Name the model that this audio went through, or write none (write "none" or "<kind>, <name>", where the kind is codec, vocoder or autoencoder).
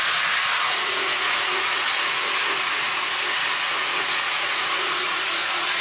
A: vocoder, Vocos